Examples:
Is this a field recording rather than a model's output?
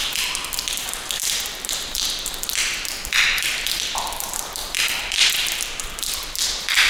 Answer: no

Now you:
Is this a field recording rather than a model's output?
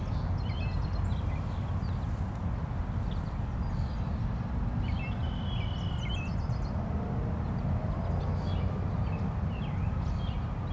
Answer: yes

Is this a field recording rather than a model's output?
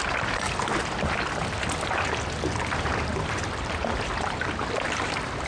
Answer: yes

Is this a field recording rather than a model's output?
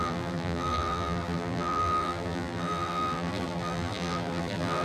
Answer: no